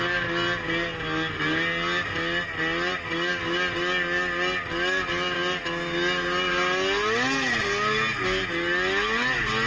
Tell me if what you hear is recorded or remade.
recorded